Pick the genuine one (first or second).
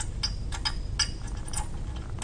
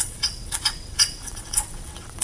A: first